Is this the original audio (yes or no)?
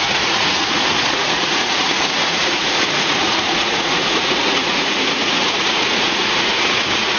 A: no